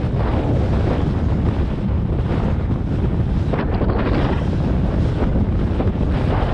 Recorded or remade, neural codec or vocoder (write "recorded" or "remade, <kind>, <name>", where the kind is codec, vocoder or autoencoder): recorded